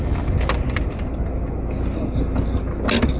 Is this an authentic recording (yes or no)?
yes